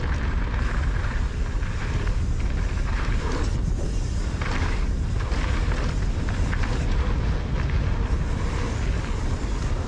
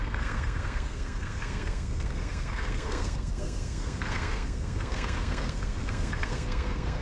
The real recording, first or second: first